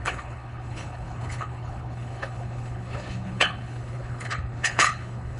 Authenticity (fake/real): fake